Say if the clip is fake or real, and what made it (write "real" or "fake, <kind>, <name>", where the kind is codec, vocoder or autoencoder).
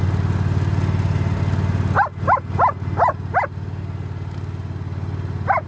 real